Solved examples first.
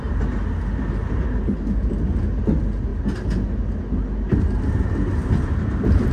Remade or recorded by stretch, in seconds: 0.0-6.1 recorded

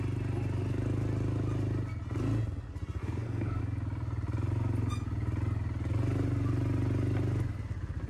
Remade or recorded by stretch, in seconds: 0.0-3.0 recorded; 3.0-3.6 remade; 3.6-8.1 recorded

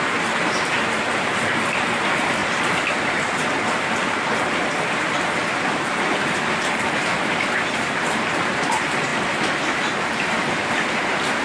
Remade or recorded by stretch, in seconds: 0.0-2.4 remade; 2.4-5.5 recorded; 5.5-11.4 remade

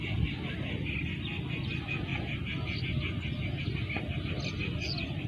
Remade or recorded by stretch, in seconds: 0.0-2.1 recorded; 2.1-2.8 remade; 2.8-5.3 recorded

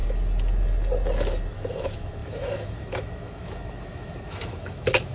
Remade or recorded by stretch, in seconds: 0.0-1.5 recorded; 1.5-5.1 remade

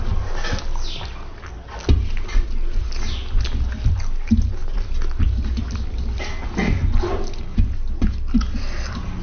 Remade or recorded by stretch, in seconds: 0.0-9.2 recorded